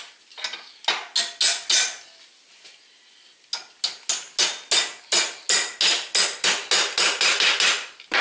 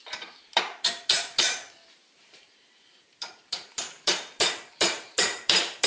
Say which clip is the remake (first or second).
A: second